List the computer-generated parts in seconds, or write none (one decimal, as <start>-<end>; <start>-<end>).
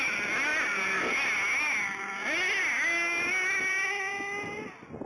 none